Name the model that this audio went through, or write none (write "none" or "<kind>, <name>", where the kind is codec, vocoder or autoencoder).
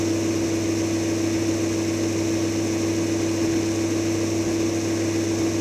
none